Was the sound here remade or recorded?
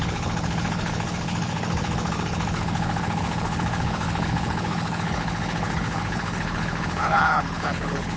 remade